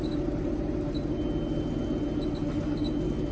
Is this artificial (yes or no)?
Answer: no